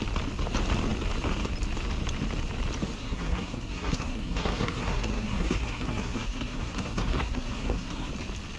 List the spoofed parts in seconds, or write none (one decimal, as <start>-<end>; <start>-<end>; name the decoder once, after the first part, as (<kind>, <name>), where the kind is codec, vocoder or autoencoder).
3.0-8.1 (codec, SNAC)